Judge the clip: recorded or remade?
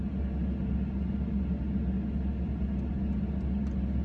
recorded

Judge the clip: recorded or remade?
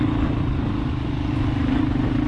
recorded